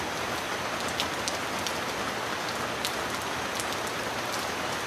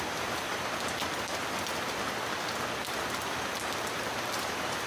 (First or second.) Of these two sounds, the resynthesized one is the second